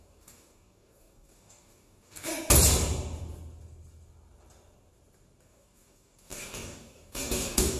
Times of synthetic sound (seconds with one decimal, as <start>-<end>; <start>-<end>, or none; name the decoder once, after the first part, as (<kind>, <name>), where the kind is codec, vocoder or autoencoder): 0.0-2.3 (codec, DAC); 5.4-7.8